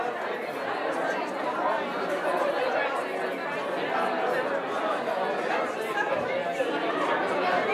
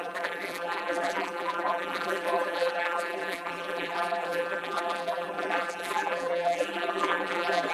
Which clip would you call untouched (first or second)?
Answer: first